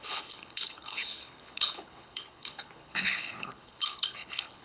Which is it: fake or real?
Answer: fake